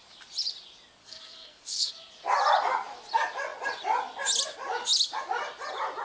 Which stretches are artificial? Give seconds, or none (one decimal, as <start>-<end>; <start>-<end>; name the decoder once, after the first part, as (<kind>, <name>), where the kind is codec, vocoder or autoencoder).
1.0-1.9 (codec, SNAC)